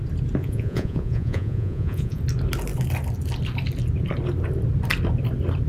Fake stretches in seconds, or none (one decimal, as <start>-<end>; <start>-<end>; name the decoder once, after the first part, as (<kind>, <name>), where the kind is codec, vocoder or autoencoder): 0.4-2.2 (vocoder, Vocos)